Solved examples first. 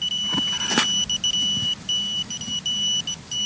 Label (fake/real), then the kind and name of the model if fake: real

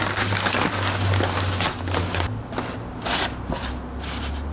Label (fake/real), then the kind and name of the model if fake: real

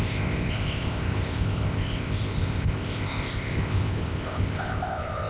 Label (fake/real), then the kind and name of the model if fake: fake, codec, ZipCodec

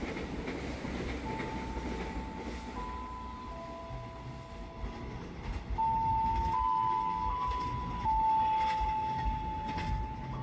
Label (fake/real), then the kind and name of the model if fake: real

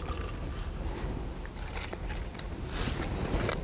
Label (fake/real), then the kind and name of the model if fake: real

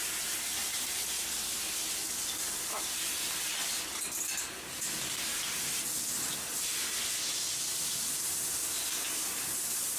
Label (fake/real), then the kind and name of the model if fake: real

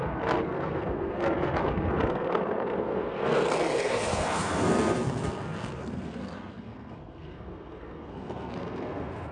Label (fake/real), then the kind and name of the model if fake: fake, codec, SNAC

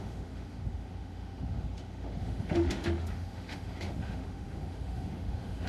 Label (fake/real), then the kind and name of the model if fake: fake, autoencoder, DAC-VAE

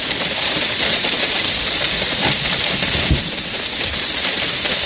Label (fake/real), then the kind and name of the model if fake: fake, vocoder, BigVGAN v2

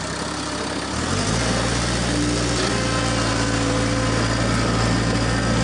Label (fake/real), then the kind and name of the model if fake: real